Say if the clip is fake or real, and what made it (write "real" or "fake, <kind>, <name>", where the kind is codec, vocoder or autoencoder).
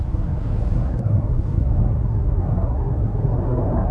fake, codec, SNAC